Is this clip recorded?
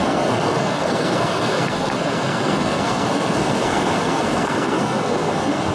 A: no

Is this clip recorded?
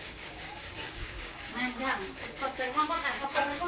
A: no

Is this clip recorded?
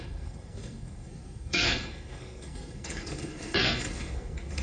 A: no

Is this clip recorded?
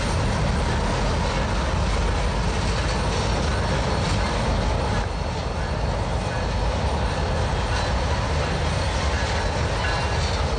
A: yes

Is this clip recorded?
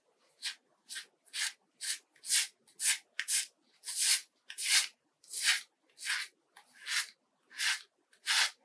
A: yes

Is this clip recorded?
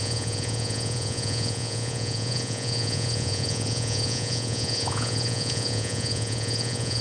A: no